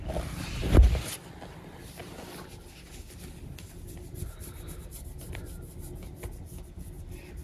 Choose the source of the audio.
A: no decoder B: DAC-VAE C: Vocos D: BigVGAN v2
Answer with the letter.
A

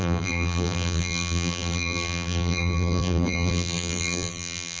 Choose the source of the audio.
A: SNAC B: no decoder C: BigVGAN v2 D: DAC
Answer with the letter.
C